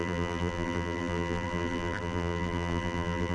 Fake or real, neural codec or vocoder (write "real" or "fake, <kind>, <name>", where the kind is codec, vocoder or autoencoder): fake, vocoder, BigVGAN v2